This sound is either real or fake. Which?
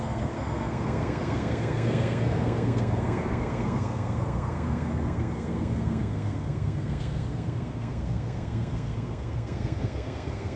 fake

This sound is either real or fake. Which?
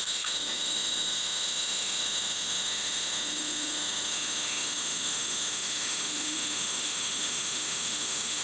fake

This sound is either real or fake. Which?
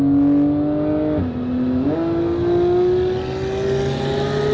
real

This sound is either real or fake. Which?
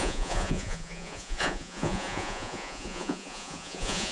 fake